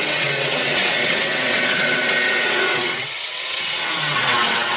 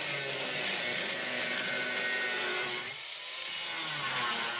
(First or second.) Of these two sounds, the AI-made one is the first